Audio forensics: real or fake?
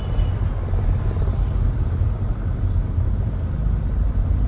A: real